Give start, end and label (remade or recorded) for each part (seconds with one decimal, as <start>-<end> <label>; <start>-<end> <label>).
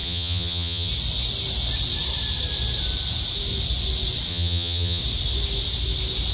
0.0-0.9 remade; 0.9-4.3 recorded; 4.3-5.0 remade; 5.0-6.3 recorded